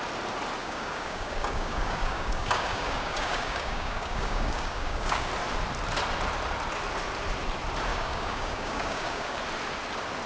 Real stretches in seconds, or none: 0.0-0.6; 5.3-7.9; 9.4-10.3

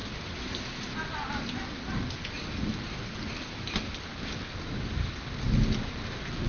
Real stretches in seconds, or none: 0.0-6.5

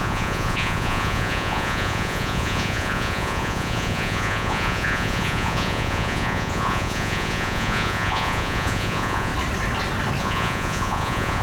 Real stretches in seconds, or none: 9.3-10.2

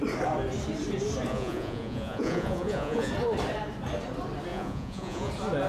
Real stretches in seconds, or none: 0.0-1.3; 3.1-4.5; 5.3-5.7

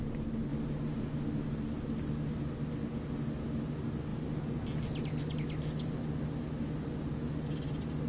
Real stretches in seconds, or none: 0.0-8.1

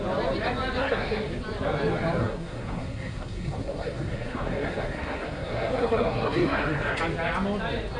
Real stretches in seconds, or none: 0.0-0.8; 1.3-2.2; 7.0-8.0